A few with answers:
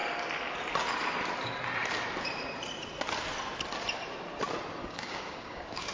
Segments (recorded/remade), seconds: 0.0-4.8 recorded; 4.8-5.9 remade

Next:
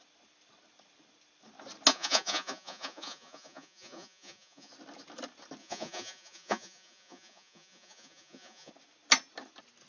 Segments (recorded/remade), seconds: 0.0-1.9 recorded; 1.9-4.7 remade; 4.7-5.6 recorded; 5.6-8.7 remade; 8.7-9.9 recorded

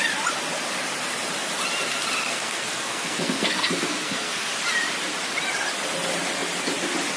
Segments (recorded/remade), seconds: 0.0-2.3 recorded; 2.3-4.5 remade; 4.5-7.2 recorded

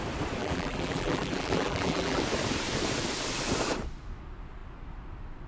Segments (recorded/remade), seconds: 0.0-0.4 recorded; 0.4-2.2 remade; 2.2-5.5 recorded

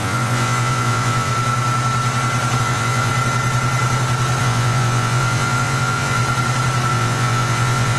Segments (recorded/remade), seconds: 0.0-1.3 remade; 1.3-2.6 recorded; 2.6-3.1 remade; 3.1-4.4 recorded; 4.4-6.2 remade; 6.2-6.9 recorded; 6.9-8.0 remade

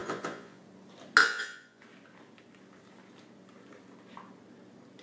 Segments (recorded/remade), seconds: 0.0-0.6 remade; 0.6-1.2 recorded; 1.2-1.8 remade; 1.8-5.0 recorded

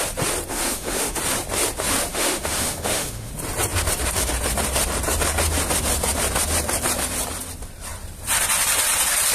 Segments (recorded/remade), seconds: 0.0-0.5 recorded; 0.5-1.2 remade; 1.2-2.1 recorded; 2.1-3.3 remade; 3.3-9.3 recorded